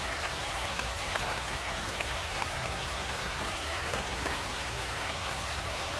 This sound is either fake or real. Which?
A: fake